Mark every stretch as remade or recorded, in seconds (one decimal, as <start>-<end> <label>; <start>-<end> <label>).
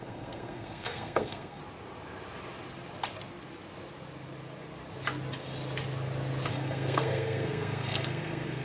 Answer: 0.0-1.6 remade; 1.6-6.5 recorded; 6.5-8.6 remade